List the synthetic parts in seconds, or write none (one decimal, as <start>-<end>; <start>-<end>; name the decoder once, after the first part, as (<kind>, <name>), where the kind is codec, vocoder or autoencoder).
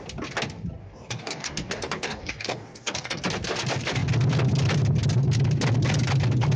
0.8-3.2 (codec, DAC)